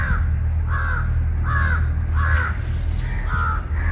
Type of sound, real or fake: real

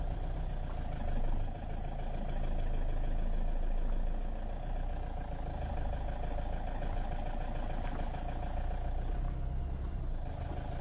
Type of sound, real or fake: real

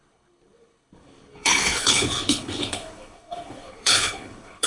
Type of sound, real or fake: fake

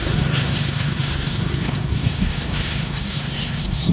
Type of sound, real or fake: fake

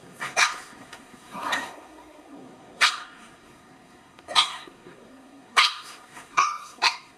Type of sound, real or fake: fake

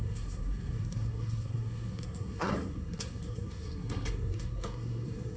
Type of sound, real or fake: fake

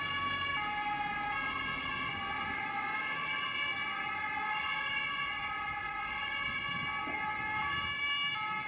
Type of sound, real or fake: real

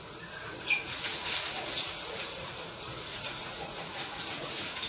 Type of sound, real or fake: fake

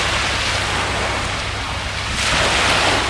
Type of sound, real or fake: real